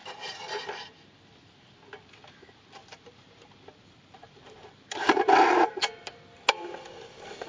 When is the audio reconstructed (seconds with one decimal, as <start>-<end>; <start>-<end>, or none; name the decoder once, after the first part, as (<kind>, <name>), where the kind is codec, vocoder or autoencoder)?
2.8-5.8 (vocoder, BigVGAN v2)